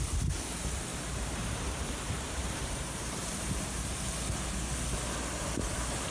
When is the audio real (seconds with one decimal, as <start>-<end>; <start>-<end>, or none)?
0.0-0.9; 4.0-6.1